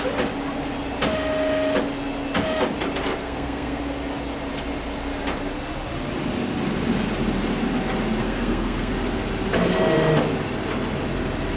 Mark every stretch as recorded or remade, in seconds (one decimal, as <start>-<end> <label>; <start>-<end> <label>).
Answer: 0.0-3.2 recorded; 3.2-3.8 remade; 3.8-8.2 recorded; 8.2-8.9 remade; 8.9-11.6 recorded